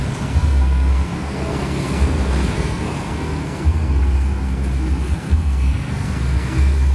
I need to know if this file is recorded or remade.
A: remade